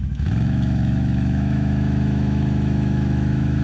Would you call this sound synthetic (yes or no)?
yes